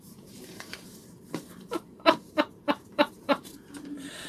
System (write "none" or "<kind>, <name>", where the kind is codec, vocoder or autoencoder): vocoder, BigVGAN v2